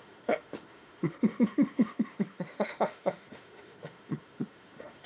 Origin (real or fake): fake